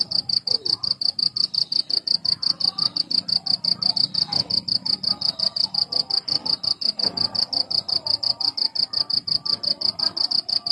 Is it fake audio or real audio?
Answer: real